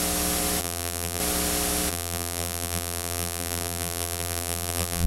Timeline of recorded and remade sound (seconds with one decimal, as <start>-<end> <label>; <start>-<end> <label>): 0.0-0.6 recorded; 0.6-1.2 remade; 1.2-1.9 recorded; 1.9-5.1 remade